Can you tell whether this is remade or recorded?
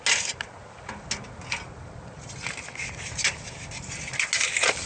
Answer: recorded